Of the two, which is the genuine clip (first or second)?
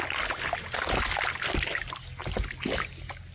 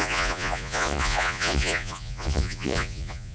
first